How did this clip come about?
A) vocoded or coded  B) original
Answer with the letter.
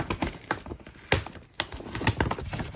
B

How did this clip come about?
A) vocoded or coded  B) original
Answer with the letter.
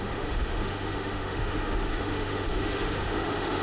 A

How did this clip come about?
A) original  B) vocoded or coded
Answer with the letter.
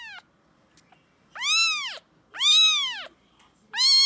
A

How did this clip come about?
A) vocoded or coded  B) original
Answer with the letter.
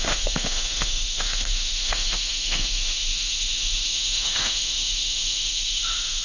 A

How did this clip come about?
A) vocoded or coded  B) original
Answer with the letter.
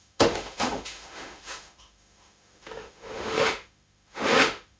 A